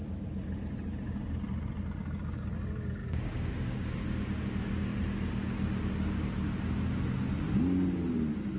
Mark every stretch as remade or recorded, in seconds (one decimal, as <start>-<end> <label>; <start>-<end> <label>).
0.0-3.0 recorded; 3.0-3.8 remade; 3.8-8.6 recorded